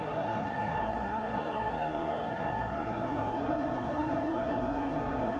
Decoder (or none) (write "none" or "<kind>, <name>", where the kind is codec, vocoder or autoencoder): codec, SNAC